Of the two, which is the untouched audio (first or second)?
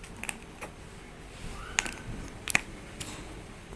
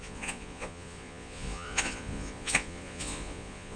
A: first